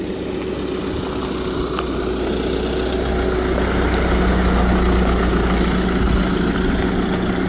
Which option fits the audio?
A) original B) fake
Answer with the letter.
A